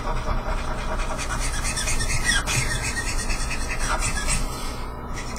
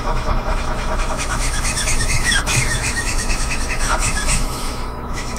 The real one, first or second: first